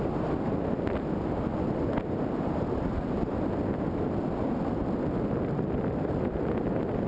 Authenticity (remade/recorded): recorded